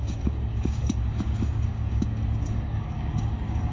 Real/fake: fake